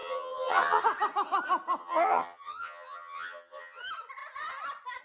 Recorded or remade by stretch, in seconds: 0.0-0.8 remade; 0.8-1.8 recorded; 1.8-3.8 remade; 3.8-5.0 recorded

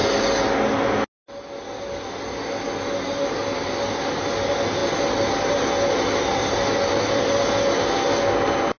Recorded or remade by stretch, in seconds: 0.0-8.8 recorded

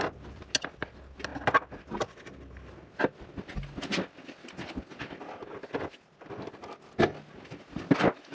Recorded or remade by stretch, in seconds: 0.0-8.3 recorded

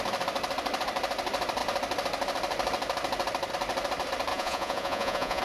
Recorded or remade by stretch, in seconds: 0.0-4.3 recorded; 4.3-5.4 remade

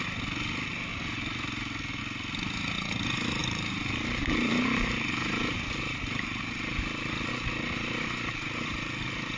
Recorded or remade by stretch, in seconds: 0.0-3.4 recorded; 3.4-7.3 remade; 7.3-9.4 recorded

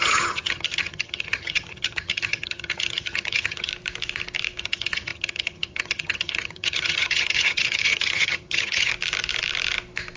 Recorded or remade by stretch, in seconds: 0.0-3.7 remade; 3.7-4.6 recorded; 4.6-8.9 remade; 8.9-10.2 recorded

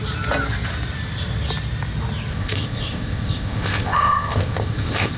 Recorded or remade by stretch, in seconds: 0.0-2.3 recorded; 2.3-5.2 remade

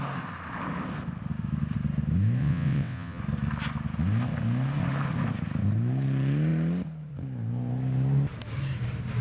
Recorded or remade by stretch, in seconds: 0.0-2.4 recorded; 2.4-3.2 remade; 3.2-9.2 recorded